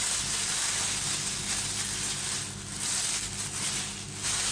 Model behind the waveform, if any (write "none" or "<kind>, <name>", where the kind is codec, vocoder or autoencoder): none